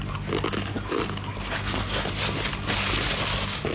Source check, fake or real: real